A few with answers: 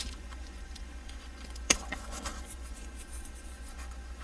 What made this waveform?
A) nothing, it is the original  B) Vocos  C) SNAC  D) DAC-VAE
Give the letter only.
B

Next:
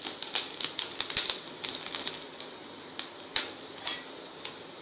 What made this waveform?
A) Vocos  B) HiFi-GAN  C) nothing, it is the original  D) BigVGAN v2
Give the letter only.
D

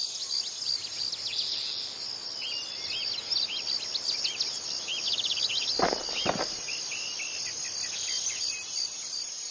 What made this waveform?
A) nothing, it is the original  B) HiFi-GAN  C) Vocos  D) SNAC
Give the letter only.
A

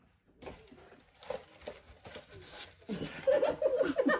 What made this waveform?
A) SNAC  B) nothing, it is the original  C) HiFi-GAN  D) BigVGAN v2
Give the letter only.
B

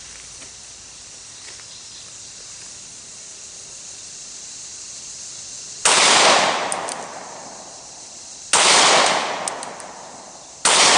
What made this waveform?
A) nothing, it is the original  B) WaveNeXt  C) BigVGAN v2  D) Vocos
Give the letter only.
A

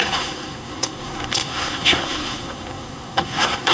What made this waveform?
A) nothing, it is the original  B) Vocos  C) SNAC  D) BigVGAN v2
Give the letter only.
C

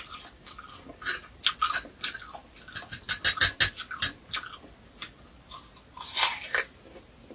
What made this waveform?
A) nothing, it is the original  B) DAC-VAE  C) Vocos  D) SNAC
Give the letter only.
A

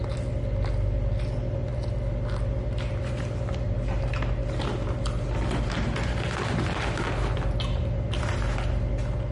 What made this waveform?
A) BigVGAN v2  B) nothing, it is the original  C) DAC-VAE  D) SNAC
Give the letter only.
B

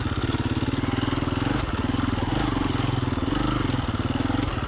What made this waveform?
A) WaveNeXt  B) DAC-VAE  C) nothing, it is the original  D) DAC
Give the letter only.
C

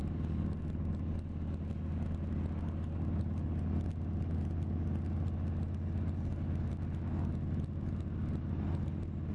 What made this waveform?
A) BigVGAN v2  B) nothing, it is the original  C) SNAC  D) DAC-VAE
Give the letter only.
B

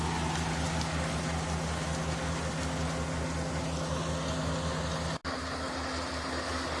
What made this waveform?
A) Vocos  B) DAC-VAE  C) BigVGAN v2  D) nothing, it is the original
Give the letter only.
D